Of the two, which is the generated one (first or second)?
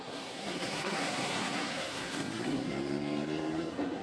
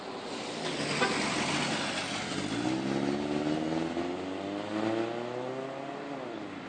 first